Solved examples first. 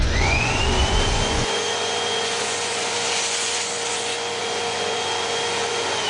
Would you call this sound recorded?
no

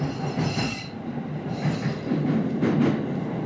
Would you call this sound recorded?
yes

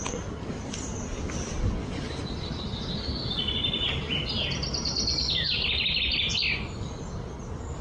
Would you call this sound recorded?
yes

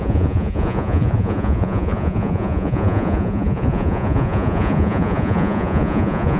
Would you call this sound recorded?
no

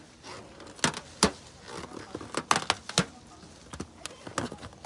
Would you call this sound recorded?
yes